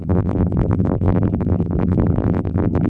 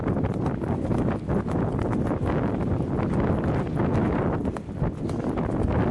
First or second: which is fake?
first